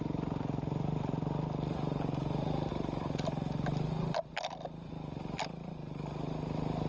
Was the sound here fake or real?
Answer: fake